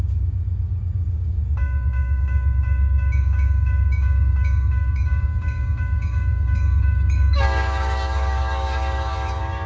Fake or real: fake